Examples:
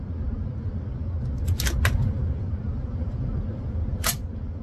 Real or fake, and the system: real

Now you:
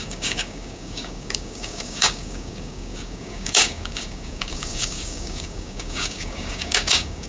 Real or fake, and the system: fake, codec, DAC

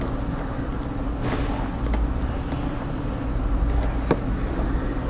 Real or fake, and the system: real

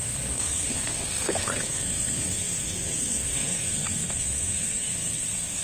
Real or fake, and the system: fake, codec, SNAC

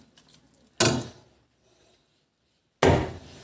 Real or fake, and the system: real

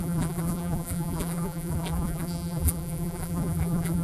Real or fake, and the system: fake, vocoder, BigVGAN v2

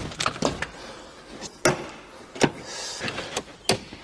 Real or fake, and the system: real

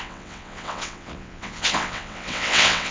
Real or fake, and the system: fake, vocoder, WaveNeXt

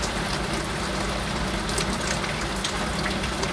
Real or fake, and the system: real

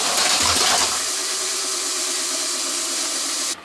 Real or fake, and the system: real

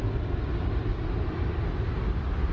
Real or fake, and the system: real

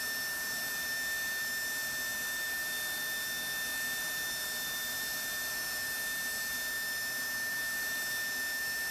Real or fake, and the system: real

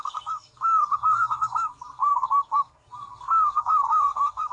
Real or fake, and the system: fake, codec, SNAC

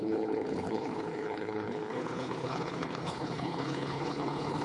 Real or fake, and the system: fake, codec, HILCodec